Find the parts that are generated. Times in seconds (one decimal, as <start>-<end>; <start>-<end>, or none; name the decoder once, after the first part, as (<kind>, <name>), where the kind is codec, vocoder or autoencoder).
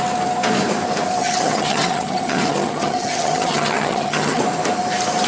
1.2-4.4 (vocoder, HiFi-GAN)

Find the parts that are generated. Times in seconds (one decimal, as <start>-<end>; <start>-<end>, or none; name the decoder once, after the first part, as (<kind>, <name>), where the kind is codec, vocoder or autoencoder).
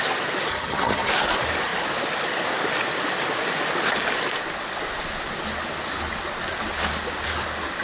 0.5-1.1 (vocoder, HiFi-GAN)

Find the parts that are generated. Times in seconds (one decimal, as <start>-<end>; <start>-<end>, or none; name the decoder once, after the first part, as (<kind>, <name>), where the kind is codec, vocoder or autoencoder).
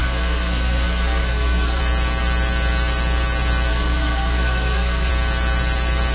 0.0-1.8 (codec, SNAC); 3.7-5.1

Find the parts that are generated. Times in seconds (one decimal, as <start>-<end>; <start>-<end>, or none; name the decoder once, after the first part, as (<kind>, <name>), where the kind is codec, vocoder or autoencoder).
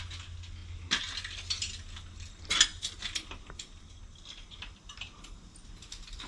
none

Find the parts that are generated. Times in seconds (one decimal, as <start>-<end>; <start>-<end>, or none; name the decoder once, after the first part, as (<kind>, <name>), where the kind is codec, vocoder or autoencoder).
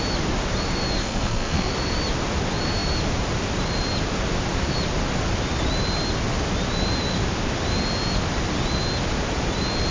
1.0-1.7 (codec, SNAC)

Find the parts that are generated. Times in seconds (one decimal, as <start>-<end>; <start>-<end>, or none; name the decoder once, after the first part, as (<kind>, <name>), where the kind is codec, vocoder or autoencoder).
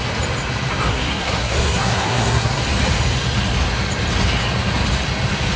0.9-2.6 (codec, SNAC)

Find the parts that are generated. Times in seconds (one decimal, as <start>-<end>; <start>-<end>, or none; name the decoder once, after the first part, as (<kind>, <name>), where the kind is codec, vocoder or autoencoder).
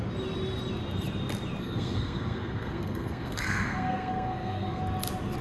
1.6-4.8 (codec, SNAC)